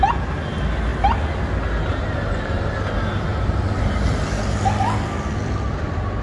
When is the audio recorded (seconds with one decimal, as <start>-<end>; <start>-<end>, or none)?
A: 0.0-6.2